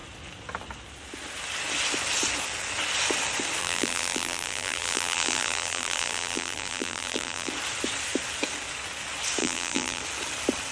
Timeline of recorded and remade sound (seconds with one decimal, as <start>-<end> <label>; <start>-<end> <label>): 0.0-3.6 recorded; 3.6-7.5 remade; 7.5-9.4 recorded; 9.4-10.0 remade; 10.0-10.7 recorded